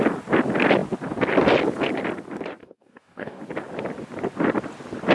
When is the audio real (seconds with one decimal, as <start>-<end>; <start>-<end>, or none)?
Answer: 0.0-2.6; 3.4-5.1